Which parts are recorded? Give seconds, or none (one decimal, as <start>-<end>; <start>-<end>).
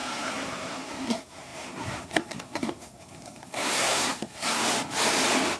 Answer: 4.6-5.6